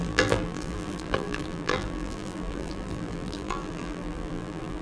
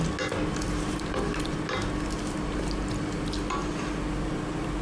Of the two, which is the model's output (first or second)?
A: first